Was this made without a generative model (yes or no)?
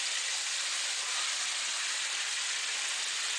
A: yes